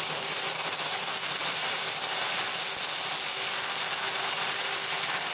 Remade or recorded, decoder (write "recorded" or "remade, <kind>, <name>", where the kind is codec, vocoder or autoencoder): recorded